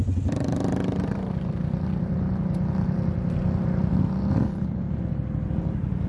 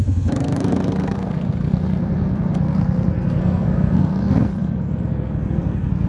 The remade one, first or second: second